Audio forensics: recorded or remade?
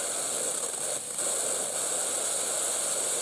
recorded